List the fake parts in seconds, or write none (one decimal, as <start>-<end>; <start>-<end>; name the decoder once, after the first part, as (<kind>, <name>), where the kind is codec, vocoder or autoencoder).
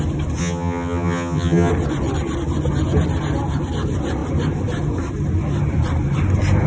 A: 0.4-1.7 (vocoder, HiFi-GAN)